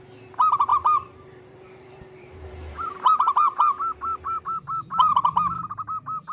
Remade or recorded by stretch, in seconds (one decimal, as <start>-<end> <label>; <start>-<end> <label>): 0.0-0.7 recorded; 0.7-4.4 remade; 4.4-6.3 recorded